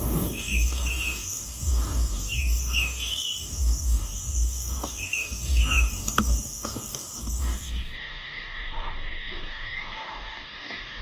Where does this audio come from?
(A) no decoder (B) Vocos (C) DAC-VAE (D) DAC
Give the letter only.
D